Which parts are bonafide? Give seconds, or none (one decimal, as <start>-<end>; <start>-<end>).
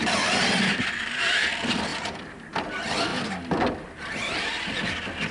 0.0-1.9; 2.6-3.1; 3.7-5.3